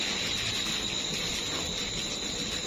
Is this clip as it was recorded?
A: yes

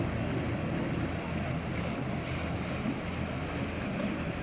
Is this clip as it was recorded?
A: yes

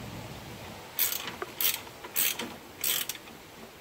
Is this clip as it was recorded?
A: yes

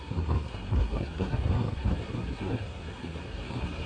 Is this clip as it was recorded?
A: no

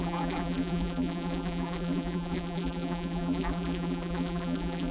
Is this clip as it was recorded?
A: no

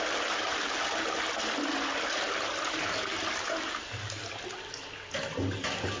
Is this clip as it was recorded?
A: yes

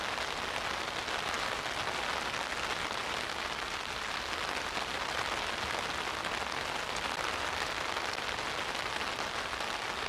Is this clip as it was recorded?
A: yes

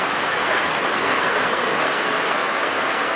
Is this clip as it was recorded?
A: no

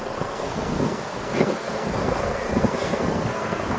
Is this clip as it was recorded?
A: no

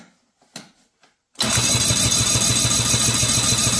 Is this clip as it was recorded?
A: yes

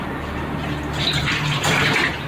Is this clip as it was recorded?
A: yes